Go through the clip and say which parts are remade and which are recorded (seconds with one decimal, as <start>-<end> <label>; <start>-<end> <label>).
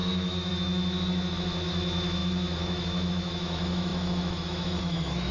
0.0-5.3 remade